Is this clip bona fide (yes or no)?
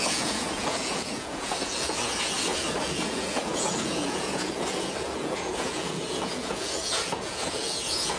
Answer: no